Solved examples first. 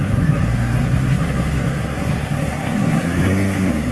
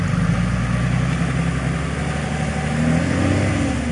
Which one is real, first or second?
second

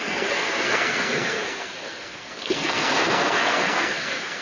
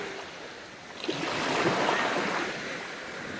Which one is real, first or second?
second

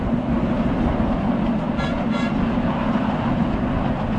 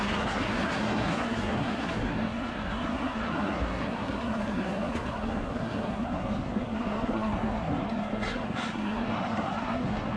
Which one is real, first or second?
first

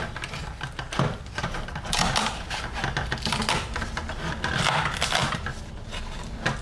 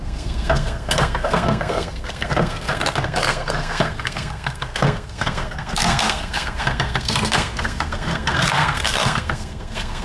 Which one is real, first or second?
first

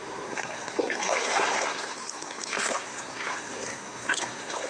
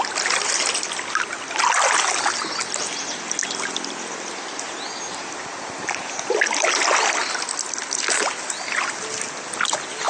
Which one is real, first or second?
second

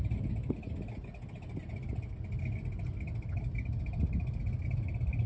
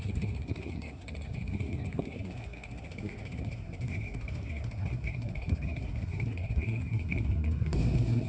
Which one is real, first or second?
first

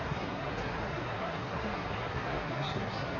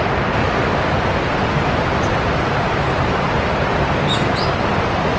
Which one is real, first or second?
second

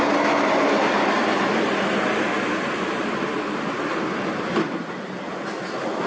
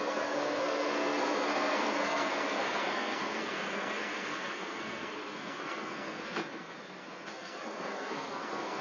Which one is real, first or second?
first